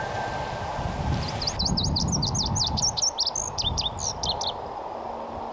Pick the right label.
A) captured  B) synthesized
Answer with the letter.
A